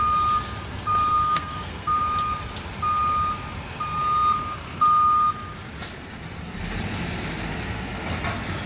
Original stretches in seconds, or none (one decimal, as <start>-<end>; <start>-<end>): 0.0-1.1; 2.0-8.7

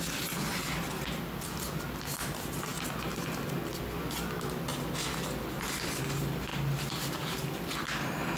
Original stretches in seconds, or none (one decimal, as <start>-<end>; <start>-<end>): 0.0-8.4

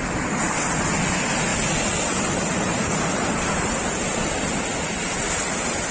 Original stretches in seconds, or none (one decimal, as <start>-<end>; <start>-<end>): 0.0-5.9

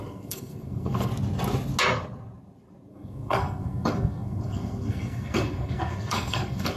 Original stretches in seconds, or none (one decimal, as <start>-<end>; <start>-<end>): 1.1-2.9

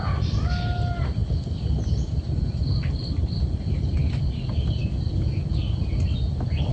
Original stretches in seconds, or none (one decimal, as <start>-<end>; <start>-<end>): 0.0-6.7

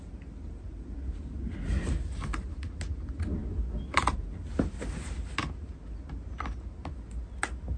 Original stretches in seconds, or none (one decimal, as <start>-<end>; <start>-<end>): 0.0-7.8